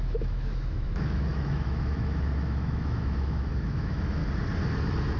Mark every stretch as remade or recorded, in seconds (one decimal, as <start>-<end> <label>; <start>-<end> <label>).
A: 0.0-4.2 remade; 4.2-5.2 recorded